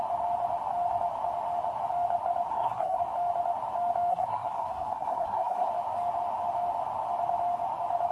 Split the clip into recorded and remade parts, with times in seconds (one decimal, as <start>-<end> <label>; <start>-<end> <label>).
0.0-2.5 recorded; 2.5-3.0 remade; 3.0-4.1 recorded; 4.1-5.7 remade; 5.7-8.1 recorded

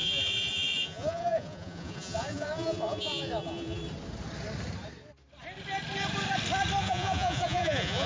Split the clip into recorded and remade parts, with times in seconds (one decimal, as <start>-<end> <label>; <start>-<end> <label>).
0.0-3.8 remade; 3.8-6.8 recorded; 6.8-8.1 remade

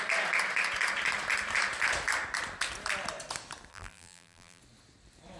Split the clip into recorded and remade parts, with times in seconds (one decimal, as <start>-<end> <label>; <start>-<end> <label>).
0.0-3.7 recorded; 3.7-4.6 remade; 4.6-5.4 recorded

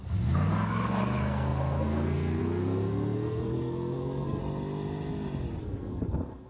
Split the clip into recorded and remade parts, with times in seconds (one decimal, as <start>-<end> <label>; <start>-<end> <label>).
0.0-4.4 remade; 4.4-5.6 recorded; 5.6-6.5 remade

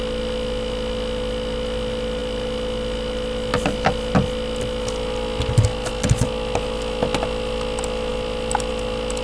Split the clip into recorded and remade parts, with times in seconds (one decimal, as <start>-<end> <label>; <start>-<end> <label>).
0.0-9.2 recorded

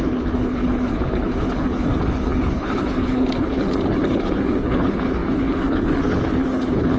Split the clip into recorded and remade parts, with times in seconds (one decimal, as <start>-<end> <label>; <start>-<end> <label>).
0.0-7.0 remade